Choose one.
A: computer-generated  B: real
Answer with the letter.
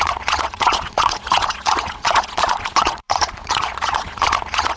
A